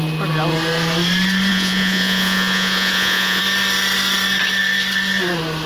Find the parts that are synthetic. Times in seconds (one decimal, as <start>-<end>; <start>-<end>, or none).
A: 1.5-3.4